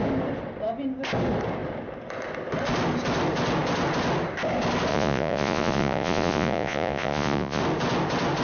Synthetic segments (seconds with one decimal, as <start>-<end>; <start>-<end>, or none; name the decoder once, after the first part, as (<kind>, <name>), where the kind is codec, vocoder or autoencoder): 4.9-7.6 (vocoder, Vocos)